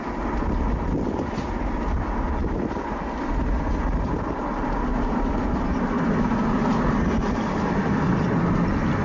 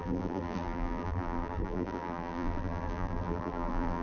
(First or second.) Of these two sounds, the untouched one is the first